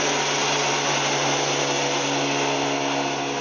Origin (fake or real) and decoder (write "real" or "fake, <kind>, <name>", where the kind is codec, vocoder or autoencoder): real